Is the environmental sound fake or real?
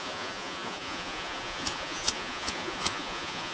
fake